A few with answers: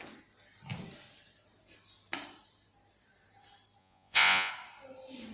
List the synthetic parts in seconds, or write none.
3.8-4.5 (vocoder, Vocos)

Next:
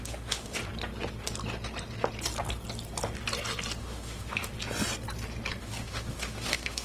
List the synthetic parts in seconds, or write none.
0.0-0.6 (autoencoder, DAC-VAE); 3.8-4.5; 5.6-6.8

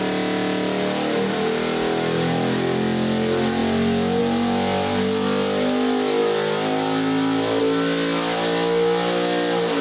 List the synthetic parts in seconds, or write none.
none

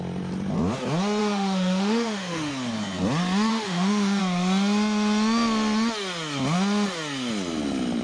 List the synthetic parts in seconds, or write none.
1.2-2.5 (autoencoder, DAC-VAE); 3.5-4.2

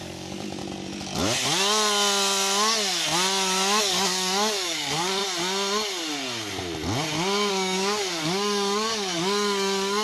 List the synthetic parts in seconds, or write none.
0.0-0.6 (codec, DAC); 3.8-5.2; 7.5-10.0

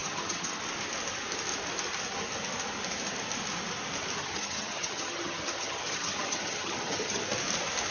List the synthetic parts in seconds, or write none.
0.0-0.6 (vocoder, HiFi-GAN); 4.2-7.2

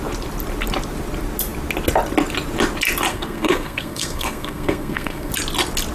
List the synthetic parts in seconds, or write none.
3.1-5.3 (codec, SNAC)